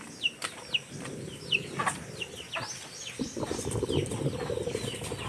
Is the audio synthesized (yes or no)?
no